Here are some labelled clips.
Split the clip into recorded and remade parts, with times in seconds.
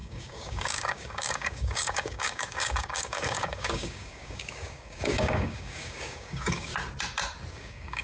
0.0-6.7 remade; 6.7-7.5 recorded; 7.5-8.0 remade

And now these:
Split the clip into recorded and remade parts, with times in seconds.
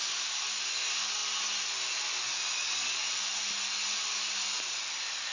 0.0-5.3 recorded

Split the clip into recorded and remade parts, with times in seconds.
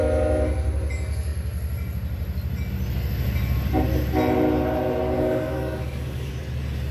0.0-5.0 recorded; 5.0-6.3 remade; 6.3-6.9 recorded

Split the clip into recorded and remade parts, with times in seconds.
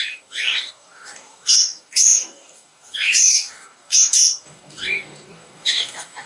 0.0-6.3 remade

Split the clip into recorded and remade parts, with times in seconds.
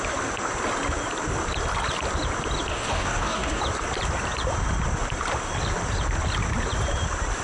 0.0-2.7 recorded; 2.7-3.6 remade; 3.6-7.4 recorded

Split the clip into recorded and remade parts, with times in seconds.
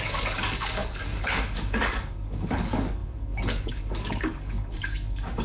0.0-5.4 remade